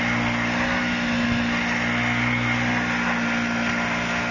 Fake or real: real